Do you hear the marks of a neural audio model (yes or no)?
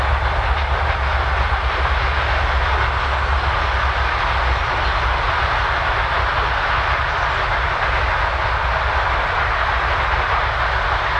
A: no